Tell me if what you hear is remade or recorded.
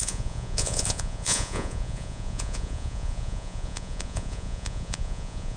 remade